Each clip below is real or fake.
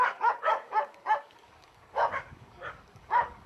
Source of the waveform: fake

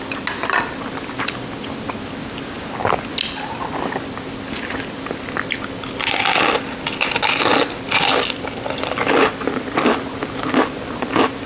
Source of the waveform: real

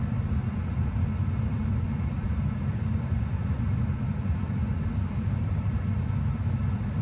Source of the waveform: real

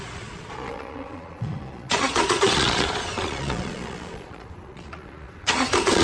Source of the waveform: fake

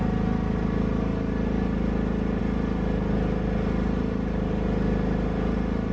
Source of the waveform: real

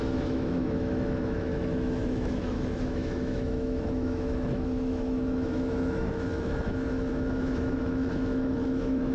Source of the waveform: fake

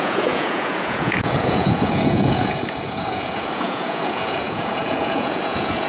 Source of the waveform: fake